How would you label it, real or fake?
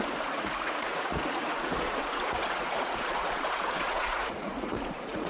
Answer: fake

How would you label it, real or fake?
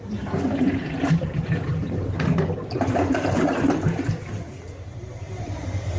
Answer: fake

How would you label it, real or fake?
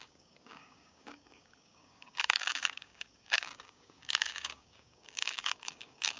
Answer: fake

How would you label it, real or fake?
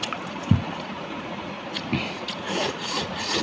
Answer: fake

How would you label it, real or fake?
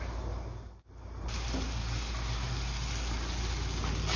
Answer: real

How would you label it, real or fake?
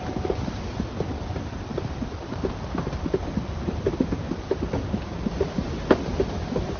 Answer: real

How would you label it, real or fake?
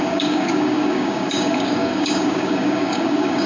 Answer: fake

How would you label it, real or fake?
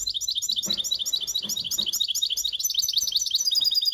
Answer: real